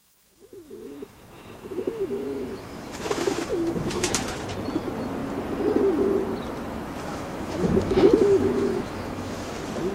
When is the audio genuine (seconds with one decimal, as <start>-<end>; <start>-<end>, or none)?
4.1-7.1; 9.5-9.9